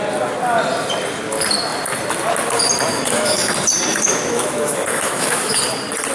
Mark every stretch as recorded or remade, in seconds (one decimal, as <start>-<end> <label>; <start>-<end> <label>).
0.0-2.9 recorded; 2.9-3.5 remade; 3.5-3.9 recorded; 3.9-5.6 remade; 5.6-6.1 recorded